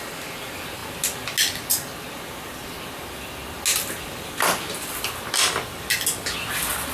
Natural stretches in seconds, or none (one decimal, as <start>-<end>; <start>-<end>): 0.0-6.9